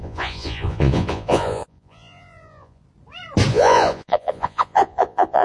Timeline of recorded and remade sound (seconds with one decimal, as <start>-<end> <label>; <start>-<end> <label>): 0.0-2.8 remade; 2.8-3.5 recorded; 3.5-5.4 remade